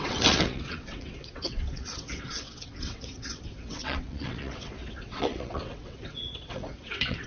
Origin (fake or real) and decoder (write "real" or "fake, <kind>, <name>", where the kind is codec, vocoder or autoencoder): fake, vocoder, WaveNeXt